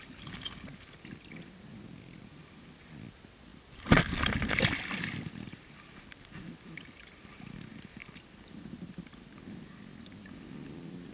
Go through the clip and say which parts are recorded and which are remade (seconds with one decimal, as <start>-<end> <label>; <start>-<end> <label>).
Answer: 0.0-11.1 recorded